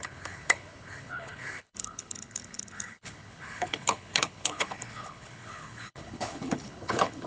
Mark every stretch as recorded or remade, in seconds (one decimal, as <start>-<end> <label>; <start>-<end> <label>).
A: 0.0-7.3 remade